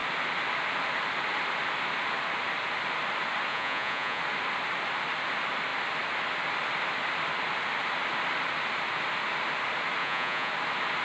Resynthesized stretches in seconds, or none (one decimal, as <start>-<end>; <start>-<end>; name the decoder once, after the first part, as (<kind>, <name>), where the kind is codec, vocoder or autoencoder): 3.5-4.2 (vocoder, Vocos); 10.0-10.5